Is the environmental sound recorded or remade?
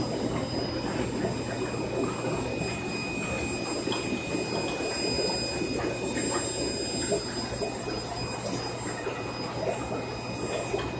recorded